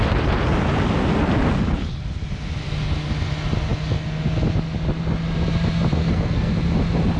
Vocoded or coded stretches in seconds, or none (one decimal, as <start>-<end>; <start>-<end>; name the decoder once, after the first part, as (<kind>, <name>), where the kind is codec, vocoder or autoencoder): 6.0-6.5 (codec, SNAC)